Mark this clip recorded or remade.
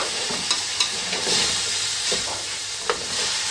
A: recorded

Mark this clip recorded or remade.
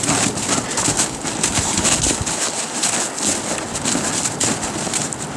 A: recorded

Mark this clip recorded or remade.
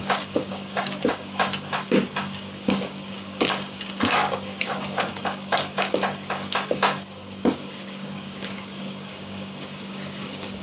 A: remade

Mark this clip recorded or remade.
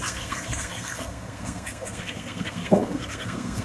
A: remade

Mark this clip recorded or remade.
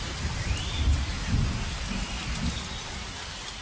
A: recorded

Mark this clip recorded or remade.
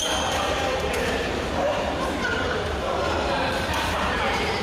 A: remade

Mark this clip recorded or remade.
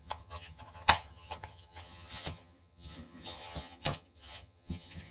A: remade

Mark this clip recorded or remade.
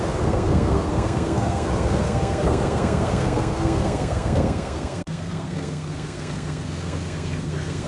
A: remade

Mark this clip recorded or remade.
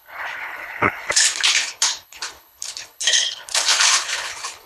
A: remade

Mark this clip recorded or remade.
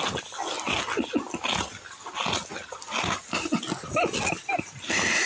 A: recorded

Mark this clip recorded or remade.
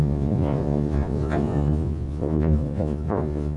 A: remade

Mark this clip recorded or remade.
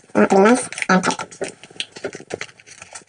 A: recorded